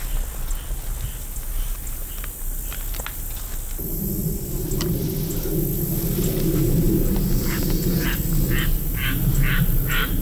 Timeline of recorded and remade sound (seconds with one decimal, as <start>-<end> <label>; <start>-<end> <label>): 0.0-10.2 recorded